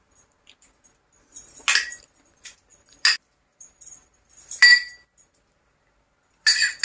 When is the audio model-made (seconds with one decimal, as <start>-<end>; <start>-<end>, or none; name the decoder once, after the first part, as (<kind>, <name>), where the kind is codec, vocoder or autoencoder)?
none